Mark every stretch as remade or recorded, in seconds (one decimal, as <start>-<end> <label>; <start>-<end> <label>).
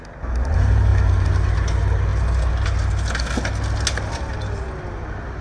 0.0-5.4 recorded